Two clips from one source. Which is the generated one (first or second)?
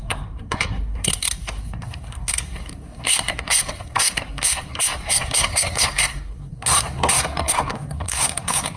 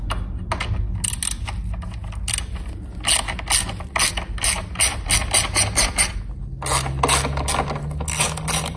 first